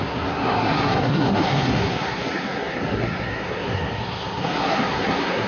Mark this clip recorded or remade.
remade